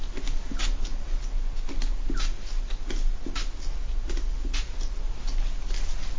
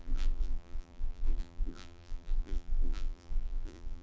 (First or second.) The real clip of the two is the first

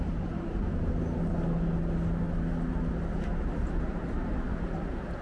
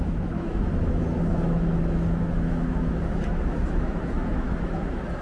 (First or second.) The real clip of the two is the first